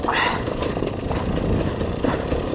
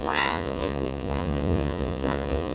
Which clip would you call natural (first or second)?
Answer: first